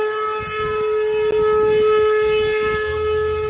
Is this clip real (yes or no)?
yes